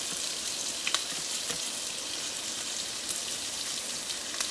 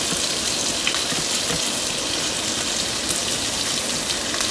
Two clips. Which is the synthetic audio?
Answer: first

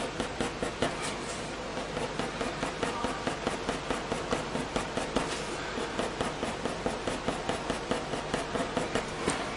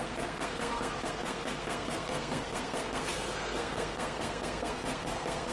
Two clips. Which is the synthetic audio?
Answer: second